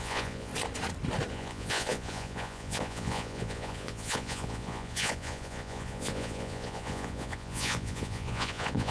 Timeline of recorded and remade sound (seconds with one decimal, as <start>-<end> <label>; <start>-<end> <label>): 0.0-0.5 remade; 0.5-1.3 recorded; 1.3-8.9 remade